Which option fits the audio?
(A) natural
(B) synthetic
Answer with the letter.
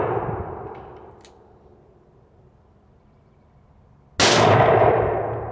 A